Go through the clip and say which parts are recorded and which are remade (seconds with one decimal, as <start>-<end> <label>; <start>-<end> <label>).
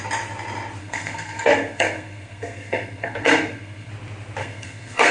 0.0-0.8 recorded; 0.8-3.9 remade; 3.9-4.4 recorded; 4.4-5.1 remade